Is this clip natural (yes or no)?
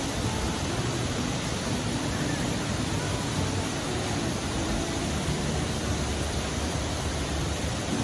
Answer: no